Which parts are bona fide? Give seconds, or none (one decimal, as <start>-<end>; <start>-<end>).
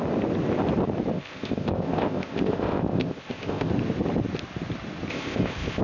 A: 0.0-1.1; 3.7-5.1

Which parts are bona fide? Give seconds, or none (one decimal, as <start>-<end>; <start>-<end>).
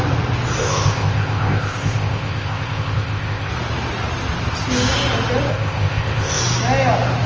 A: 0.0-0.6; 3.5-5.5; 6.4-7.3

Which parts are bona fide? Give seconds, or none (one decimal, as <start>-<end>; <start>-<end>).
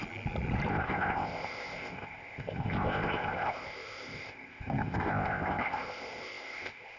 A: 0.0-0.7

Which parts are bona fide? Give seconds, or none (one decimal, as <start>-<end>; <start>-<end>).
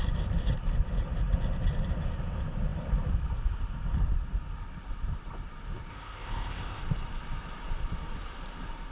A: 0.0-5.9; 6.8-8.9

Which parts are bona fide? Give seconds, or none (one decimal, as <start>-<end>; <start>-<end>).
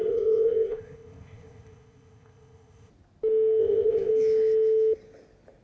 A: 2.9-3.6; 4.1-5.6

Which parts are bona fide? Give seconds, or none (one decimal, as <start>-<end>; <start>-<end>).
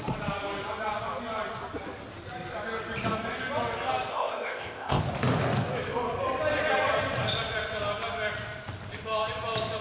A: 0.0-4.1; 5.0-9.8